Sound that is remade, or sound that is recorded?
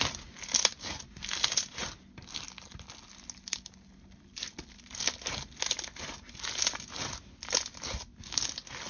recorded